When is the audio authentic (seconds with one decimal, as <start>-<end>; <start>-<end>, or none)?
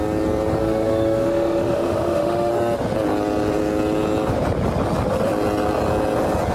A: 0.0-0.6; 2.5-6.5